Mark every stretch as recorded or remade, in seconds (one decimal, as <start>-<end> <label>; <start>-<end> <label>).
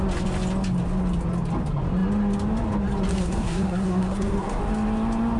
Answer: 0.0-3.1 recorded; 3.1-4.6 remade; 4.6-5.4 recorded